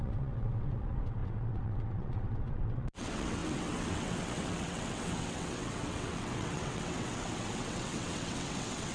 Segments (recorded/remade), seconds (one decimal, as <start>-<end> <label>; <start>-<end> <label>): 0.0-8.9 remade